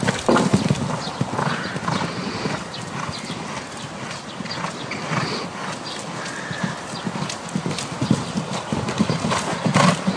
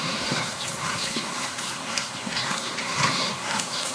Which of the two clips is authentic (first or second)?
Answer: first